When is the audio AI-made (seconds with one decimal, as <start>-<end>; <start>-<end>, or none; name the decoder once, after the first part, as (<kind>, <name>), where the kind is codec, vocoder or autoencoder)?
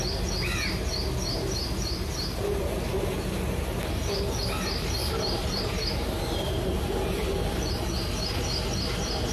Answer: 1.6-2.9 (vocoder, BigVGAN v2); 5.0-7.8